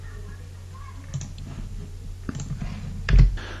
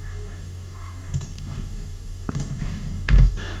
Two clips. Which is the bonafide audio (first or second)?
first